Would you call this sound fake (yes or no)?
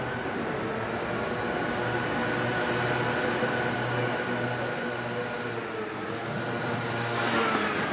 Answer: no